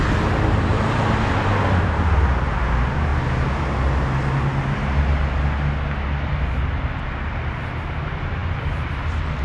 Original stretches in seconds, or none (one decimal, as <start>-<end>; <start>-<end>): 0.0-9.4